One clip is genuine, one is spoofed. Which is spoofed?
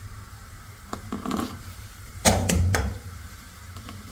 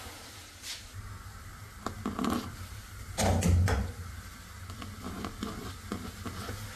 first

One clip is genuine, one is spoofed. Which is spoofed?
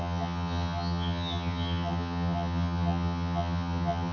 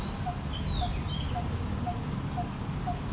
first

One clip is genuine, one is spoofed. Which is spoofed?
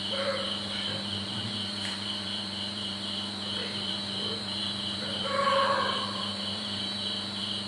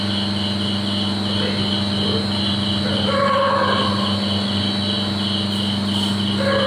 first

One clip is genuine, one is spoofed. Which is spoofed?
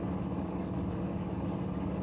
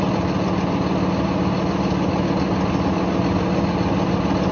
first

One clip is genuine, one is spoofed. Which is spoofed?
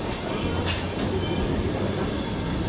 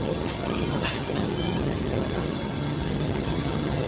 second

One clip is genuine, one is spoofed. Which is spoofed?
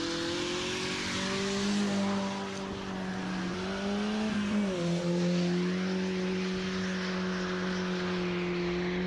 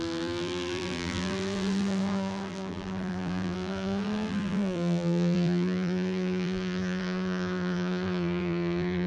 second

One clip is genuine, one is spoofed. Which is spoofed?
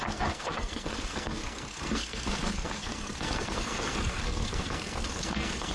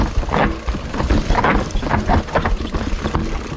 first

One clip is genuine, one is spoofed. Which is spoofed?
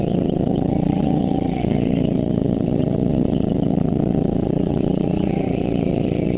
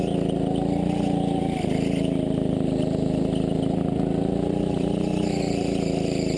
first